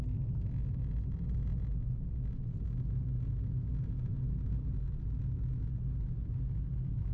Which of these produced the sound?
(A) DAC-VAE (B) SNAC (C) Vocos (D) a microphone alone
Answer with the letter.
D